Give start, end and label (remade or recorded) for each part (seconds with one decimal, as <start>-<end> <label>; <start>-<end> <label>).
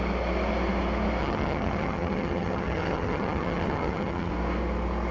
0.0-1.2 recorded; 1.2-4.3 remade; 4.3-5.1 recorded